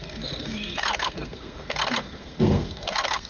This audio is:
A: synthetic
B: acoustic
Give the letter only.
A